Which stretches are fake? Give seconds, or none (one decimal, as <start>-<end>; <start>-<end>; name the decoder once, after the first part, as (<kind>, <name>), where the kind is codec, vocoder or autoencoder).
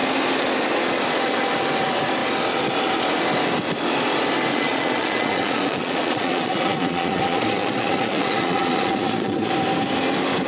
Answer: 4.5-9.5 (vocoder, Vocos)